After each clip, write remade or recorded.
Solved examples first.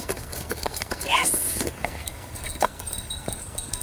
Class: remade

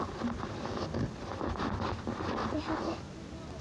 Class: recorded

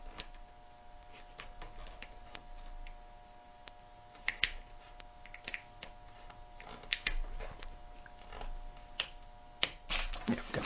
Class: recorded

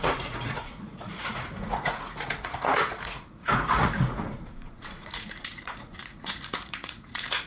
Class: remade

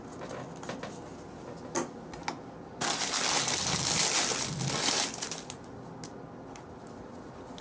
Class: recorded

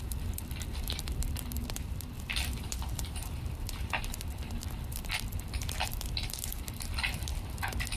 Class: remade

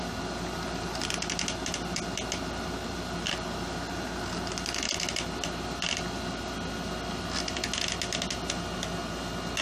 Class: recorded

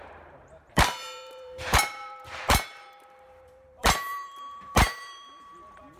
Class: remade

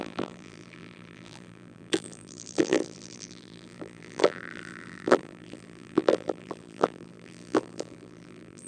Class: remade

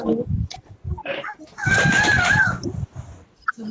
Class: remade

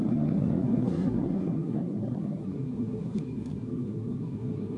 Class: remade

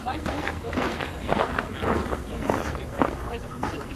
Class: remade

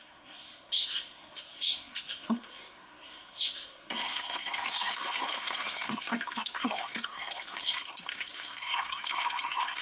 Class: remade